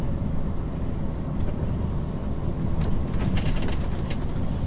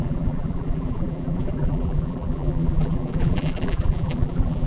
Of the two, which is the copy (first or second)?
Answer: second